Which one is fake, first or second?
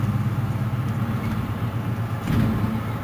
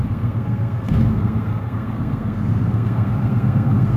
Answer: second